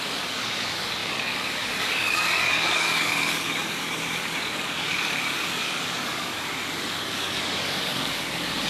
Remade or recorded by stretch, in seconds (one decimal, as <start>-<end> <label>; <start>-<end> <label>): 0.0-8.7 remade